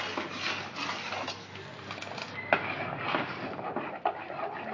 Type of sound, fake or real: real